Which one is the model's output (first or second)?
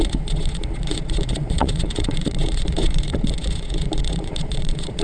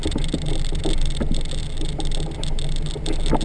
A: first